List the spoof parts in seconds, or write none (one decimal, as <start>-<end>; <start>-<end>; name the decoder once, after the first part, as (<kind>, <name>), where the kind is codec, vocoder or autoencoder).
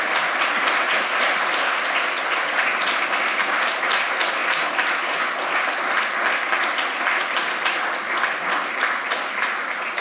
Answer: none